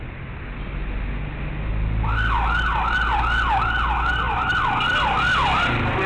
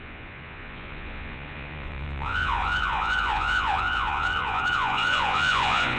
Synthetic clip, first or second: second